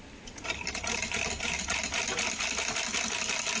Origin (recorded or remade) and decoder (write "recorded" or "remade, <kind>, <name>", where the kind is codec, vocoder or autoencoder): recorded